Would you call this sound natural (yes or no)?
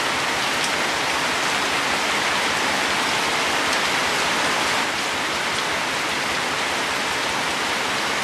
yes